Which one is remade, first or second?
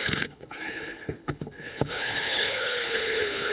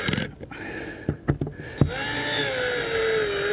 first